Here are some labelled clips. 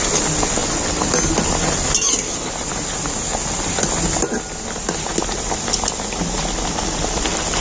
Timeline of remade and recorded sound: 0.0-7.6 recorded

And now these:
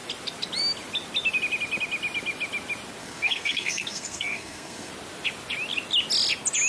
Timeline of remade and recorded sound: 0.0-3.0 recorded; 3.0-4.9 remade; 4.9-6.7 recorded